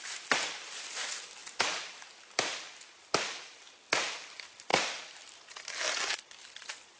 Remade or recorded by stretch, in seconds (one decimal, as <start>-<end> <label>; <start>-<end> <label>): 0.0-7.0 recorded